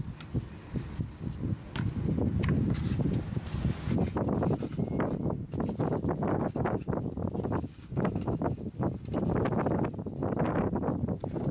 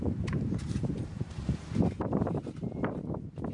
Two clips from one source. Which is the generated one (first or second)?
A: second